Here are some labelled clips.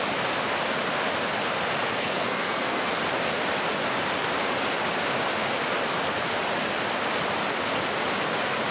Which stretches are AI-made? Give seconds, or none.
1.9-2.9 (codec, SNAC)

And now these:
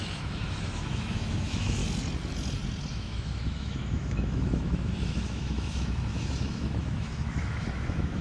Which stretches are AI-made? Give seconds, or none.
0.0-1.8 (autoencoder, DAC-VAE); 2.9-8.2

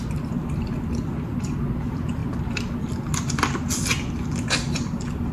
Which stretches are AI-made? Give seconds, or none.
none

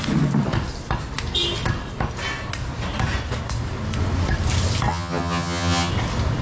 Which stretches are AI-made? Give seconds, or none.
4.9-5.9 (vocoder, HiFi-GAN)

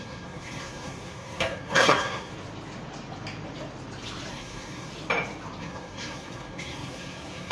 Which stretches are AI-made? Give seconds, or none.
0.0-2.3 (codec, SNAC); 4.3-4.9; 5.6-7.5

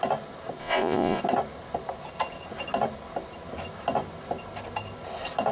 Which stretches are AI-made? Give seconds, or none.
0.6-1.2 (vocoder, Vocos)

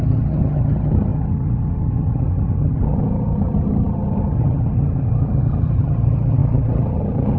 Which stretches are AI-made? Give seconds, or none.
0.0-7.4 (vocoder, HiFi-GAN)